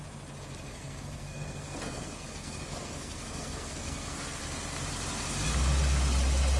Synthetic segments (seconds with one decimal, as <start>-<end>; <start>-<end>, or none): 0.7-4.4